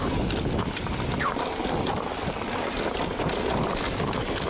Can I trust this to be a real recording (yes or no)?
yes